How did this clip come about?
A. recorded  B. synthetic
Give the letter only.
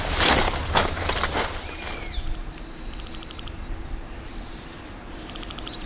B